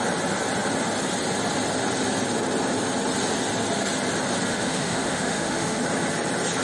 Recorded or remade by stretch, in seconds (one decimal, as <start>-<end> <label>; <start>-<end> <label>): 0.0-4.5 recorded; 4.5-5.8 remade; 5.8-6.6 recorded